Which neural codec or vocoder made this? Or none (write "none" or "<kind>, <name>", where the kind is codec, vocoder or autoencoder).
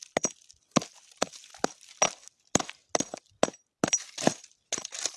none